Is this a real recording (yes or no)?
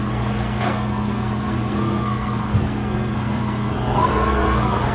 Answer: no